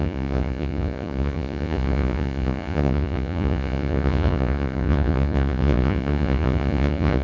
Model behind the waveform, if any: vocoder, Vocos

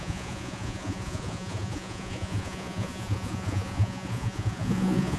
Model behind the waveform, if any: vocoder, Vocos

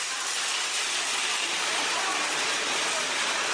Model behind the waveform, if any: none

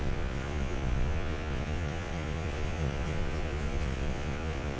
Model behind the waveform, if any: vocoder, Vocos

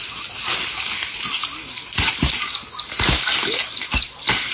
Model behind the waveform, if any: none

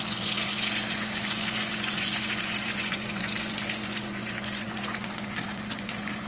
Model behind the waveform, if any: vocoder, Vocos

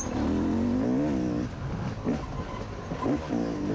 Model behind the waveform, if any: none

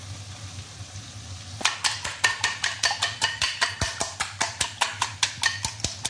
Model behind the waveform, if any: none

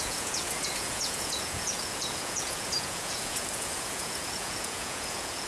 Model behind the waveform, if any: vocoder, Vocos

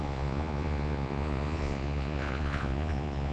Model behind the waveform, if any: vocoder, Vocos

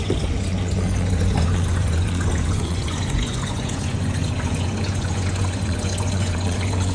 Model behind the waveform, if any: vocoder, Vocos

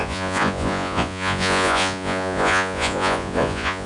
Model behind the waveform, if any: vocoder, Vocos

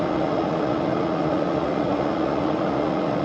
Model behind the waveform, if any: vocoder, Vocos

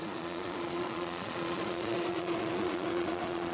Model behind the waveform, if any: vocoder, Vocos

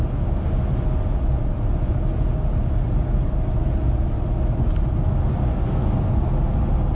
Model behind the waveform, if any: none